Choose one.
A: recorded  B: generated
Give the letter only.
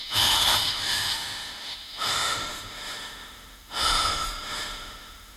B